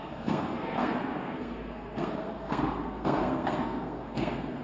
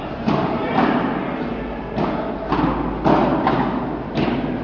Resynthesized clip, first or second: first